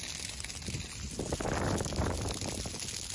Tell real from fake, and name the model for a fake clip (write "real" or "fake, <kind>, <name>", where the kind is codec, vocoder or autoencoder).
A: real